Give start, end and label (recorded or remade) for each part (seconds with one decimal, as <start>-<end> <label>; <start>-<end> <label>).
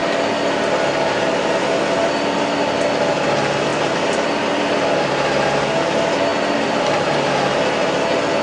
0.0-3.7 recorded; 3.7-5.1 remade; 5.1-6.3 recorded; 6.3-7.3 remade; 7.3-8.4 recorded